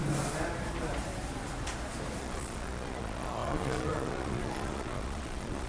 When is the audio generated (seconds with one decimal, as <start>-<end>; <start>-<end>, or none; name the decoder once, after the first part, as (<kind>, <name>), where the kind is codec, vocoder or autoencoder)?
2.2-5.7 (vocoder, Vocos)